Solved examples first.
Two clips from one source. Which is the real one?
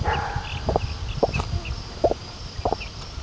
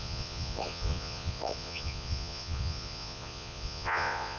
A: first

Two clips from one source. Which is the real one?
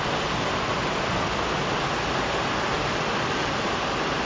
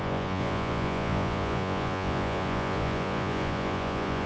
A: first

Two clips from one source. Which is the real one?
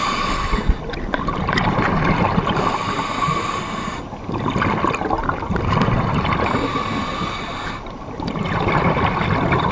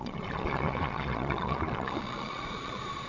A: first